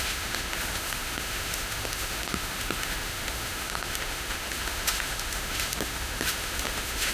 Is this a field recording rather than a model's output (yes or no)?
no